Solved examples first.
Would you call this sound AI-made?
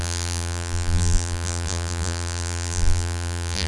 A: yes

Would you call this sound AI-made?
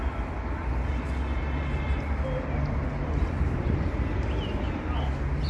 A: no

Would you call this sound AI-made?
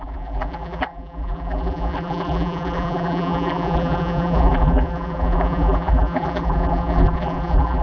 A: yes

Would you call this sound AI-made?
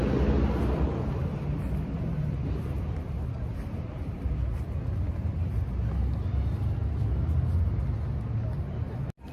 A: no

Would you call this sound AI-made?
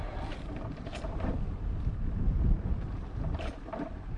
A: yes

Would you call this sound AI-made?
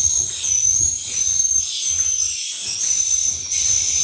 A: no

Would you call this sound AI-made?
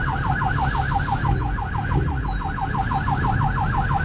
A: no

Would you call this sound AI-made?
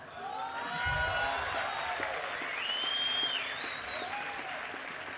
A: no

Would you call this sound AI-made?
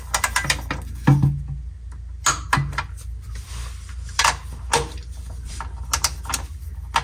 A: no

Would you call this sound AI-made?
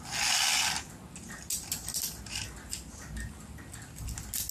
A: no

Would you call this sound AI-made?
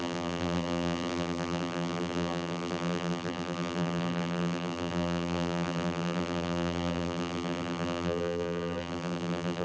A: yes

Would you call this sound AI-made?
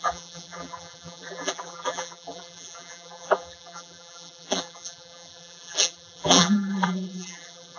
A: yes